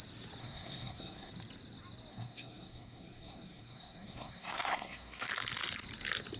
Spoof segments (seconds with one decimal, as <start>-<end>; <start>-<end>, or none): 0.4-1.3; 2.1-5.3